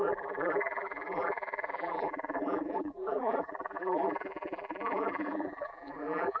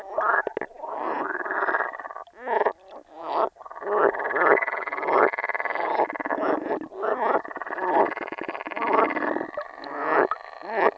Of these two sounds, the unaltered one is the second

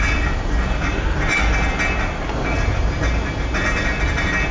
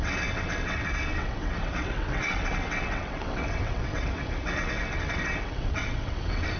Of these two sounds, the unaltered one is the first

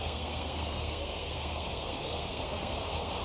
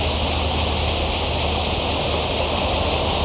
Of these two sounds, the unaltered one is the second